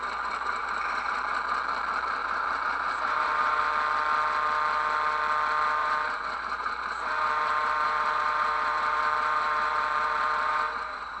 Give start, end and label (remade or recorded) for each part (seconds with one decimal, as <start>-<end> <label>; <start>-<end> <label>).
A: 0.0-0.6 recorded; 0.6-1.2 remade; 1.2-2.2 recorded; 2.2-3.7 remade; 3.7-5.8 recorded; 5.8-11.2 remade